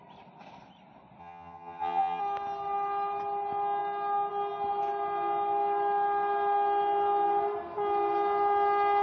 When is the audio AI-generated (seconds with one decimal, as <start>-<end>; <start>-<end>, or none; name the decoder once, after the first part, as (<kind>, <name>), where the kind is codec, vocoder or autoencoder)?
1.2-2.2 (vocoder, HiFi-GAN)

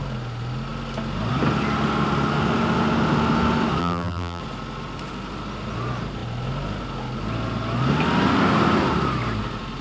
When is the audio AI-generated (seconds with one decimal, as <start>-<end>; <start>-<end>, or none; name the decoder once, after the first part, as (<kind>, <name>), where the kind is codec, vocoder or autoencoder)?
3.8-4.4 (vocoder, BigVGAN v2)

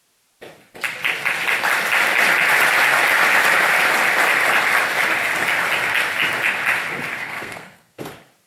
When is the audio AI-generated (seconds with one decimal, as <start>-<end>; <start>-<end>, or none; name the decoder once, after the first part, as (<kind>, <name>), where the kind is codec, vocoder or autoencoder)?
7.1-8.1 (codec, SNAC)

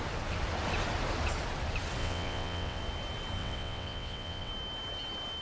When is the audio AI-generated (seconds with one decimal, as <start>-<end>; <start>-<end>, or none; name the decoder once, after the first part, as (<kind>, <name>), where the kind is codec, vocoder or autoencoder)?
2.0-2.8 (vocoder, WaveNeXt); 3.4-4.5